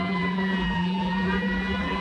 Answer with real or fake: fake